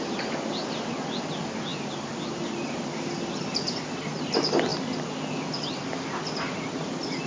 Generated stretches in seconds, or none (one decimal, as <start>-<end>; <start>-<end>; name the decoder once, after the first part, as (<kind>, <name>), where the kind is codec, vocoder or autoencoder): none